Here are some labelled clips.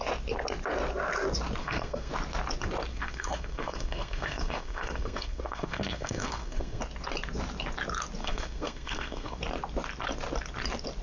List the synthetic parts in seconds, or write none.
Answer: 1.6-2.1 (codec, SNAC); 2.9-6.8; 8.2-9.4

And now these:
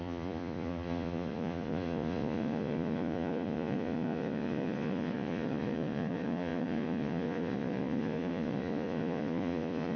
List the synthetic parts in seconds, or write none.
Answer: 0.0-10.0 (vocoder, Vocos)

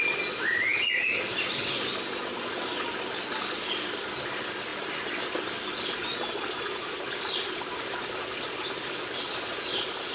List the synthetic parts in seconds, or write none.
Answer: none